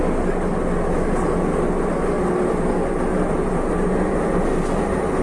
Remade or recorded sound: recorded